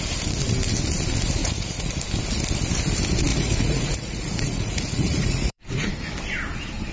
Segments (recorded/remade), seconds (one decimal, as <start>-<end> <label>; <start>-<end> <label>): 0.0-1.4 recorded; 1.4-1.9 remade; 1.9-3.3 recorded; 3.3-5.9 remade; 5.9-6.9 recorded